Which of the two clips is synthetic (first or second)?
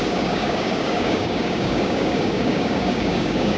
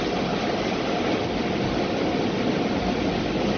first